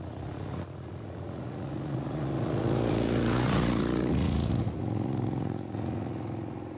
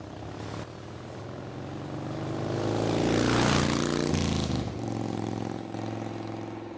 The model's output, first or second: first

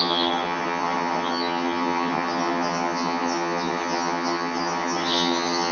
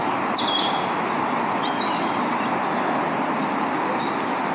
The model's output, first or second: first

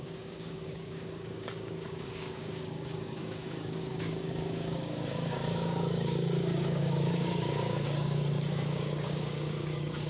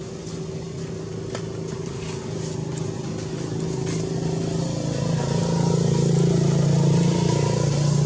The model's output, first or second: first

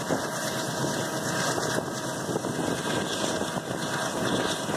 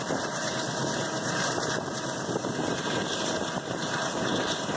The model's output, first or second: second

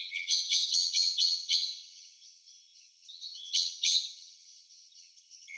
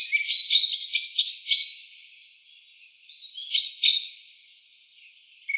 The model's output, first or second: first